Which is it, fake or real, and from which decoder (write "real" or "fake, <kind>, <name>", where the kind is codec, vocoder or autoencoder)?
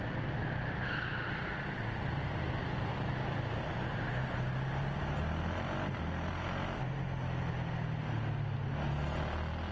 real